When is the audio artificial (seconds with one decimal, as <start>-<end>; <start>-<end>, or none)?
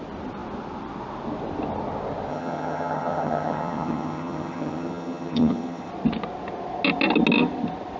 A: 2.3-5.9